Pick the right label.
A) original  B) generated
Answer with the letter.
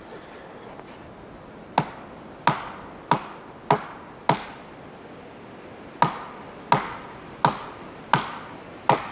A